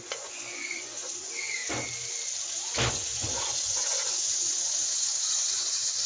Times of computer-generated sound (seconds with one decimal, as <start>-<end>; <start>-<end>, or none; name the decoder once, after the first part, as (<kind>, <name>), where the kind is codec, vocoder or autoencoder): 0.0-1.6 (vocoder, Vocos); 2.9-6.1